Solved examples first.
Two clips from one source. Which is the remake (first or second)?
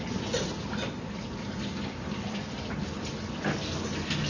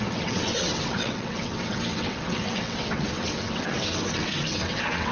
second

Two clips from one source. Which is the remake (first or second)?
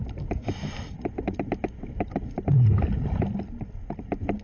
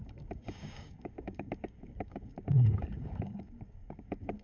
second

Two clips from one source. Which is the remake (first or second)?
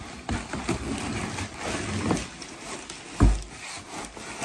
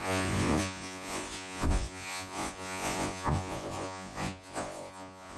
second